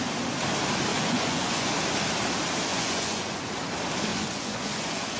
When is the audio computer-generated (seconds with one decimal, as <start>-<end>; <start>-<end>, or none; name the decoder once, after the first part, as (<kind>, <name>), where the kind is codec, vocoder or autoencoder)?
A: 0.9-1.7 (vocoder, Vocos); 2.7-3.5; 4.1-5.2